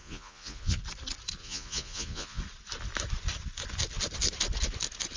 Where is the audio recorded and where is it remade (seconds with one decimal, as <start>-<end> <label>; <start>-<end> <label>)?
0.0-0.8 remade; 0.8-1.4 recorded; 1.4-2.4 remade; 2.4-5.2 recorded